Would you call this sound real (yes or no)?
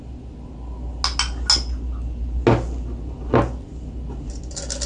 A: yes